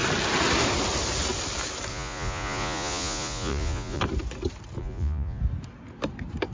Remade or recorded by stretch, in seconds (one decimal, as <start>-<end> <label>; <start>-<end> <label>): 0.0-1.9 recorded; 1.9-4.0 remade; 4.0-4.8 recorded; 4.8-5.4 remade; 5.4-6.5 recorded